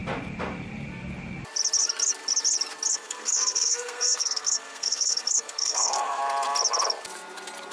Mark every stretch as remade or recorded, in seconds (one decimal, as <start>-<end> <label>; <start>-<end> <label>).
0.0-2.9 recorded; 2.9-6.2 remade; 6.2-7.7 recorded